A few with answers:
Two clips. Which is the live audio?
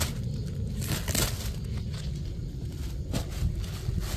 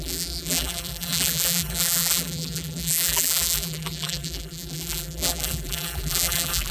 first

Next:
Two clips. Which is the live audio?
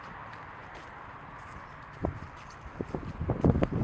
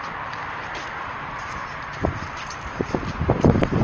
first